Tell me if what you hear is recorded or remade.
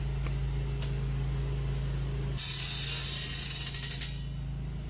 recorded